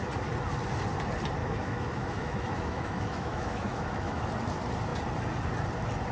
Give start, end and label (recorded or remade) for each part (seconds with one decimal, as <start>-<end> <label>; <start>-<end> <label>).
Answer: 0.0-1.4 recorded; 1.4-4.2 remade; 4.2-6.1 recorded

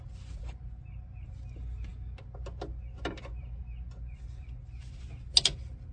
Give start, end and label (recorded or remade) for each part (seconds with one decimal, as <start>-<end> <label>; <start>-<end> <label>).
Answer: 0.0-5.9 recorded

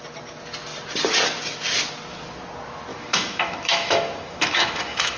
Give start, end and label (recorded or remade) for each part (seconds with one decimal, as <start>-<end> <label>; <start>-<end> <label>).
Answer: 0.0-2.9 recorded; 2.9-5.2 remade

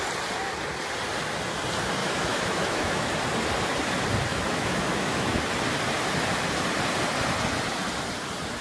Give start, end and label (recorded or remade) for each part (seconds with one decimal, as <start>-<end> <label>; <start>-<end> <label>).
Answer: 0.0-2.0 recorded; 2.0-3.1 remade; 3.1-4.3 recorded; 4.3-5.4 remade; 5.4-8.6 recorded

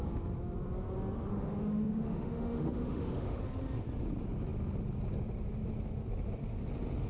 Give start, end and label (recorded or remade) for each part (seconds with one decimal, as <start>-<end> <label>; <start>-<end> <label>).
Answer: 0.0-1.3 recorded; 1.3-3.4 remade; 3.4-7.1 recorded

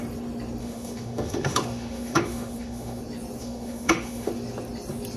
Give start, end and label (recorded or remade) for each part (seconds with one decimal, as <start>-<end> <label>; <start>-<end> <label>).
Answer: 0.0-0.6 recorded; 0.6-3.0 remade; 3.0-3.4 recorded; 3.4-4.3 remade; 4.3-5.2 recorded